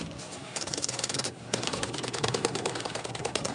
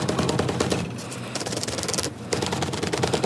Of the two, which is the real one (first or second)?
second